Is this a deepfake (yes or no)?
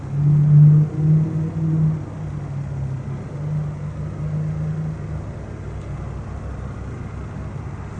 no